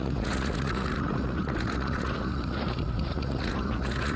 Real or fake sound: fake